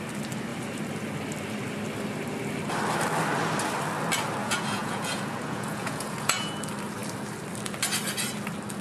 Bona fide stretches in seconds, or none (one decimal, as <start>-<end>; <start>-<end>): 0.0-4.4; 6.6-8.8